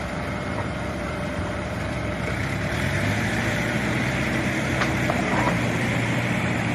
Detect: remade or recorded remade